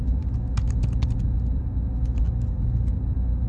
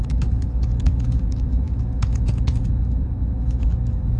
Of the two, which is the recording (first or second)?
first